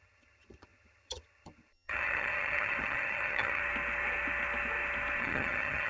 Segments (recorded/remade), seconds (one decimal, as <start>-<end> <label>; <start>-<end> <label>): 0.0-3.6 remade; 3.6-5.2 recorded; 5.2-5.9 remade